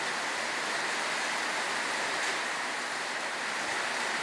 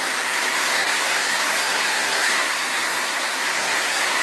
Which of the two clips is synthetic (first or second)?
second